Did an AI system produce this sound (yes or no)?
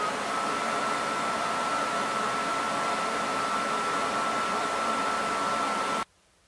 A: yes